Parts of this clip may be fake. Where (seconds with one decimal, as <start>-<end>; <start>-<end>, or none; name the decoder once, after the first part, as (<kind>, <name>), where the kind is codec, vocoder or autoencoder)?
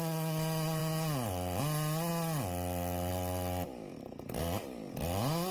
none